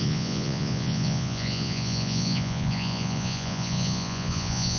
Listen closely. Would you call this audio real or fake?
fake